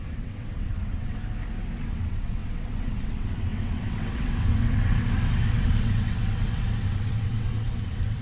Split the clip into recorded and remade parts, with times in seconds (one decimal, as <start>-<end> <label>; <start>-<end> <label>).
0.0-1.2 remade; 1.2-1.8 recorded; 1.8-8.2 remade

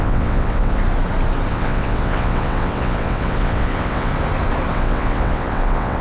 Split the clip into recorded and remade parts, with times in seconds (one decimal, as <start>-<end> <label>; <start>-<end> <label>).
0.0-0.8 remade; 0.8-1.5 recorded; 1.5-4.1 remade; 4.1-4.7 recorded; 4.7-6.0 remade